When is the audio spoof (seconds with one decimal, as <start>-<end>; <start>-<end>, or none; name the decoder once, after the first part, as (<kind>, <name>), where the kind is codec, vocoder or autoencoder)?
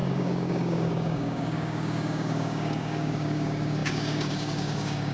0.0-5.1 (codec, DAC)